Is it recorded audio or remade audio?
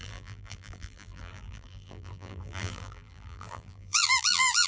remade